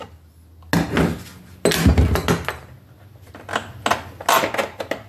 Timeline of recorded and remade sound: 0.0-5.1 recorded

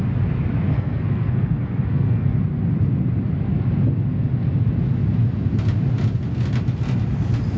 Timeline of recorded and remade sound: 0.0-0.7 recorded; 0.7-2.4 remade; 2.4-7.6 recorded

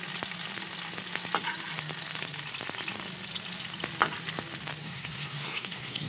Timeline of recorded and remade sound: 0.0-4.8 recorded; 4.8-6.1 remade

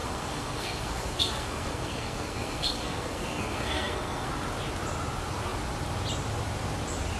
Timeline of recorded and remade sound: 0.0-4.3 remade; 4.3-7.2 recorded